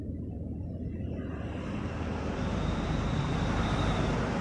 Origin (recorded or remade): remade